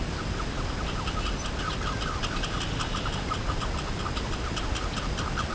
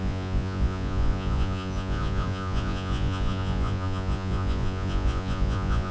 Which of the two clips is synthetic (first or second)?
second